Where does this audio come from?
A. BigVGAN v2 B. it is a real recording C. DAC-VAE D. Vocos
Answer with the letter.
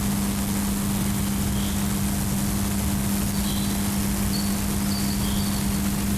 B